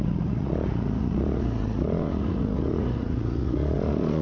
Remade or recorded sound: remade